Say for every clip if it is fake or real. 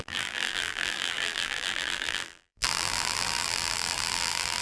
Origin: fake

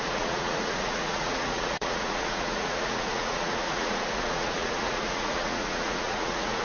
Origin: fake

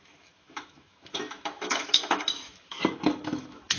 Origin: fake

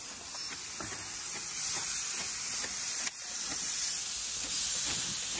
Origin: real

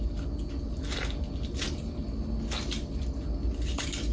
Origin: real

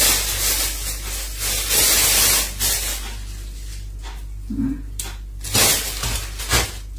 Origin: real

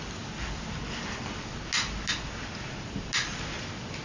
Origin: real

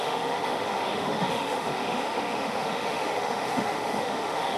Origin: fake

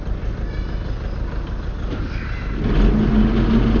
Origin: real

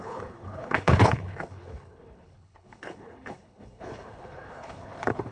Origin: fake